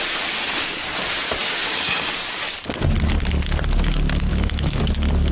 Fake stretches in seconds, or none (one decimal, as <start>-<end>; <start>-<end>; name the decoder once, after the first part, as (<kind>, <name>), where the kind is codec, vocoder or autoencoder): 4.3-4.8 (autoencoder, DAC-VAE)